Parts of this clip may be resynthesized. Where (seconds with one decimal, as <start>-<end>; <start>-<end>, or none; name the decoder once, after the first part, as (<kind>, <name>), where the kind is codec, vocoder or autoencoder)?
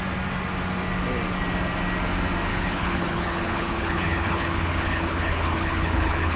2.5-6.4 (codec, HILCodec)